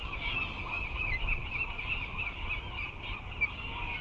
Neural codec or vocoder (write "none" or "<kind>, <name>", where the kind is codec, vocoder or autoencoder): none